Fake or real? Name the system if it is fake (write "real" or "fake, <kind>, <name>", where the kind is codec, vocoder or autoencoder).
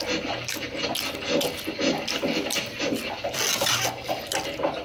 real